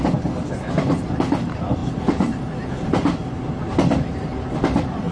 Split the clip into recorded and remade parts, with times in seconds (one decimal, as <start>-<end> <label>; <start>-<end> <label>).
0.0-5.1 recorded